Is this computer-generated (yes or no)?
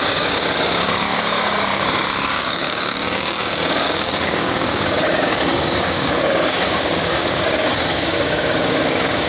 yes